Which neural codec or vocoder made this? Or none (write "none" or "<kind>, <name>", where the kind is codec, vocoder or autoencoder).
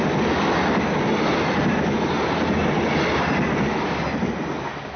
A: none